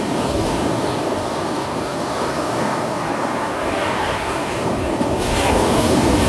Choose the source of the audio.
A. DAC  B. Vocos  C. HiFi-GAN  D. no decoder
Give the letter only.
A